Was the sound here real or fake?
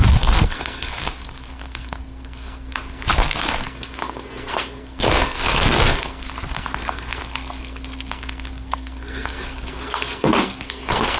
fake